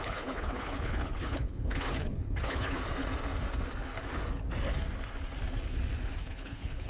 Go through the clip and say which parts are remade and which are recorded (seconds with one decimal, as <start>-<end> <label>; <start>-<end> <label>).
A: 0.0-2.8 remade; 2.8-6.2 recorded; 6.2-6.9 remade